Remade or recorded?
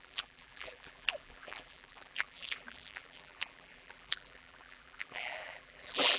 remade